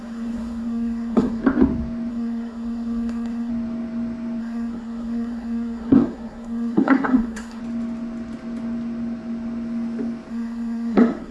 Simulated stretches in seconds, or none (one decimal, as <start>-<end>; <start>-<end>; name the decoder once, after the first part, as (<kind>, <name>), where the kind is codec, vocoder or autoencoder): 0.0-1.4 (codec, SNAC); 2.1-3.5; 4.4-7.6; 10.3-11.3